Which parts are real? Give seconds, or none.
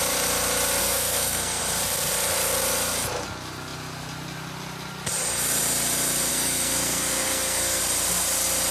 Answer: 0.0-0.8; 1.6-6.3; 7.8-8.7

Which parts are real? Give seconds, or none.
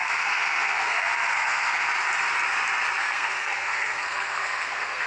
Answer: 1.9-3.0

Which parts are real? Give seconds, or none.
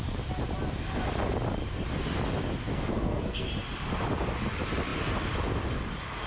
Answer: 0.0-2.7; 3.5-6.3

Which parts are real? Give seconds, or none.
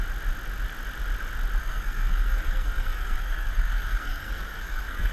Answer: 0.0-1.6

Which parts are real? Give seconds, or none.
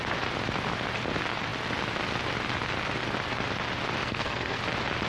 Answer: 0.0-4.0; 4.6-5.1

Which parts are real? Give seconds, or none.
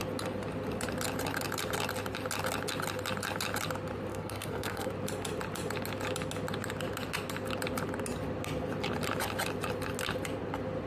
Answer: 0.0-4.1; 4.9-10.9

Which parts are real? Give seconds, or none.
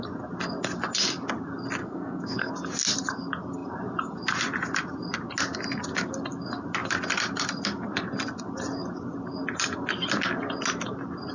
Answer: 0.0-1.8; 2.5-11.3